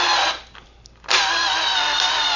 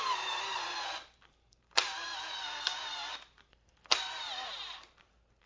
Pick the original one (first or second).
first